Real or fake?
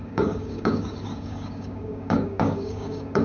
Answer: fake